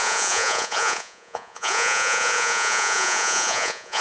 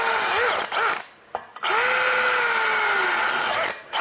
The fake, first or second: first